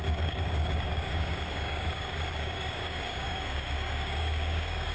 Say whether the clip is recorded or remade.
remade